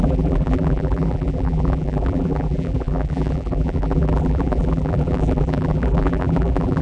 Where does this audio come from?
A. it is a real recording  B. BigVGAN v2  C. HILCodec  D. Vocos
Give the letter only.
B